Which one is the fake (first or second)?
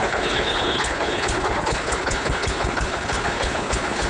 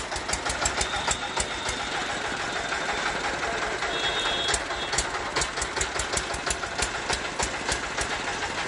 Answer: first